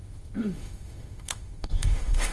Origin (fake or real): fake